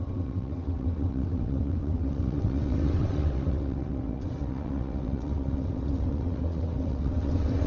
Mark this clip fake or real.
fake